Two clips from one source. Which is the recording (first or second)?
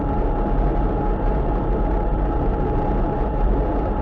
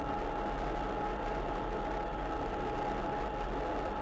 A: second